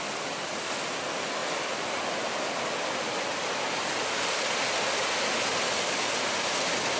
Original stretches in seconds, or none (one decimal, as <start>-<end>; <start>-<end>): 0.0-7.0